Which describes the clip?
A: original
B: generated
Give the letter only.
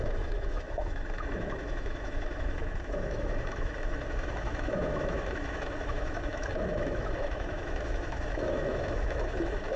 B